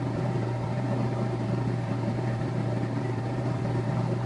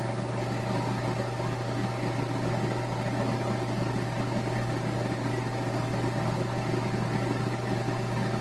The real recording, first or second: second